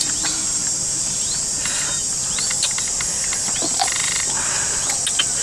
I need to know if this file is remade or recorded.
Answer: recorded